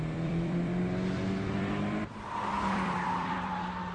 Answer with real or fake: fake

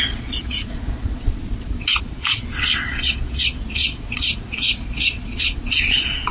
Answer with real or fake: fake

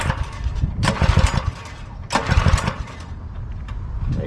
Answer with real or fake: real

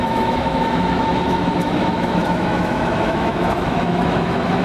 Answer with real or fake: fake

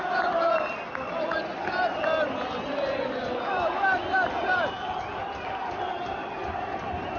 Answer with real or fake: real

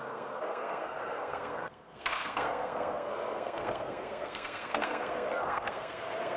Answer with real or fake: fake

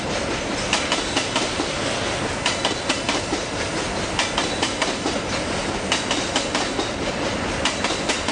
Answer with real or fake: real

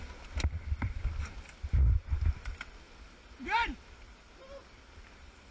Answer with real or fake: real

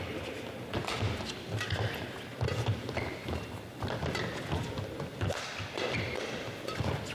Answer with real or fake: real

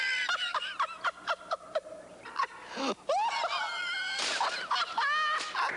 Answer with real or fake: real